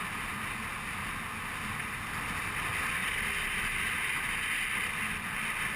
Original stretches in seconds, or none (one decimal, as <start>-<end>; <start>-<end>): 0.0-3.0; 3.6-5.8